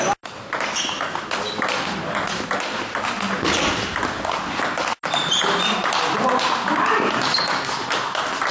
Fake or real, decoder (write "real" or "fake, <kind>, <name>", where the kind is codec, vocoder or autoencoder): real